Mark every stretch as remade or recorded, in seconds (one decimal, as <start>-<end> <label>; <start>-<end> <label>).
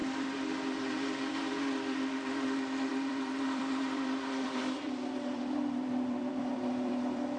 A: 0.0-7.4 remade